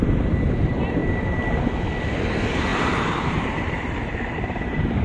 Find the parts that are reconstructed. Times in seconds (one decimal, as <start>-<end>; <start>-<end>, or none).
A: 0.0-1.0; 2.0-5.0